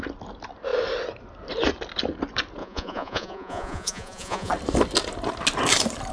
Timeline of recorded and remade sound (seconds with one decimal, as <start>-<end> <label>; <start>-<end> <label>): 0.0-2.6 recorded; 2.6-4.5 remade; 4.5-6.1 recorded